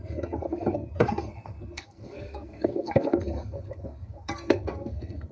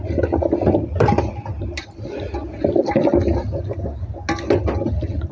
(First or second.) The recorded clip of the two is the second